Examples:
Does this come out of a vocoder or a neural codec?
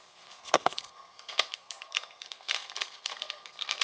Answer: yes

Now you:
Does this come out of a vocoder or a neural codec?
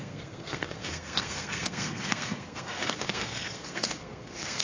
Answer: yes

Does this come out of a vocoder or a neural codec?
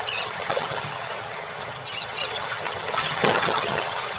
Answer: yes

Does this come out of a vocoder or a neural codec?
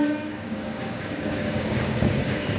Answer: yes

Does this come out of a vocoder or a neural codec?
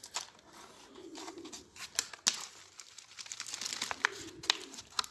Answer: no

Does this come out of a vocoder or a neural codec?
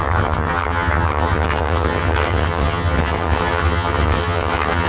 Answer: yes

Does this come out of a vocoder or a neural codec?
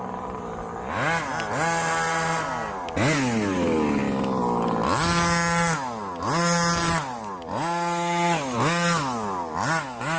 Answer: no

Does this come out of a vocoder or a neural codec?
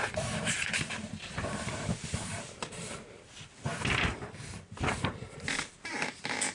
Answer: yes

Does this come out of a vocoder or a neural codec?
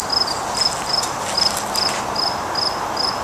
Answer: no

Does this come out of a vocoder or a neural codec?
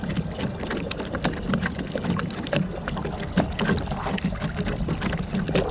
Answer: no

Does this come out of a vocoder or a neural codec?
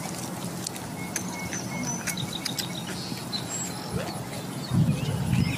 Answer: no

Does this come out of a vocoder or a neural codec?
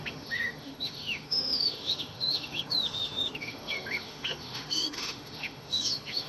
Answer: yes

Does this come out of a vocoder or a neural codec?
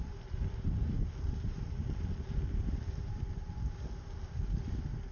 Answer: no